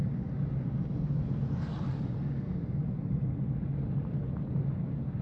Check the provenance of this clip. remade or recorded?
recorded